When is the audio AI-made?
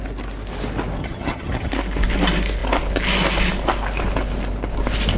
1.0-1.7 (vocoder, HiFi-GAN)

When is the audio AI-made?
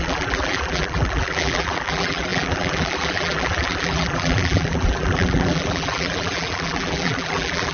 0.0-7.7 (vocoder, BigVGAN v2)